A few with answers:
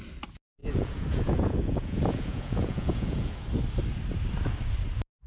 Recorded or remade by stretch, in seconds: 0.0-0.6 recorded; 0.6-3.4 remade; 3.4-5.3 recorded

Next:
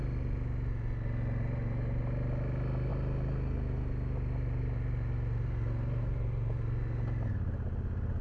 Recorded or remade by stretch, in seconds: 0.0-8.2 recorded

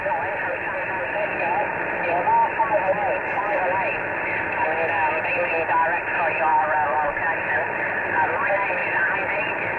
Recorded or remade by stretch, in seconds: 0.0-2.4 remade; 2.4-6.0 recorded; 6.0-9.8 remade

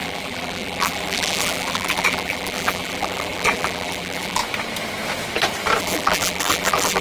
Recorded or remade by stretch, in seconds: 0.0-4.4 remade; 4.4-5.8 recorded; 5.8-7.0 remade

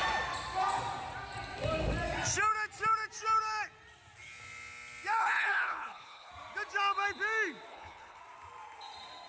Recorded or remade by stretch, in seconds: 0.0-5.2 recorded; 5.2-6.3 remade; 6.3-7.7 recorded; 7.7-8.2 remade; 8.2-9.3 recorded

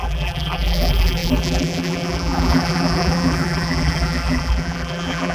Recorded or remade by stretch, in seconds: 0.0-5.3 remade

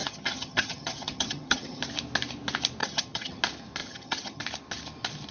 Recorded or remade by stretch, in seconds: 0.0-1.8 remade; 1.8-2.8 recorded; 2.8-3.4 remade; 3.4-3.8 recorded; 3.8-4.4 remade; 4.4-5.3 recorded

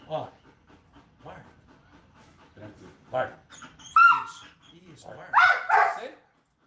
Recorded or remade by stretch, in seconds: 0.0-6.7 recorded